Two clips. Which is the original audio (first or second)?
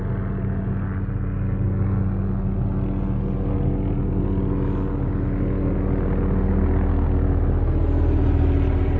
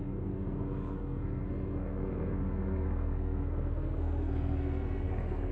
first